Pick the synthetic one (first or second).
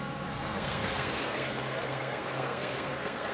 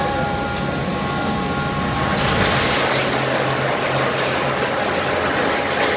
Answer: first